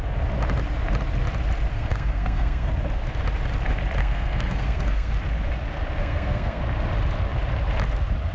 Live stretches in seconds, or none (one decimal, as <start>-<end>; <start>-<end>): 0.0-1.7; 2.7-4.0; 5.1-6.0; 6.6-8.3